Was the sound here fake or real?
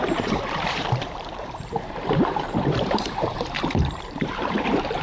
fake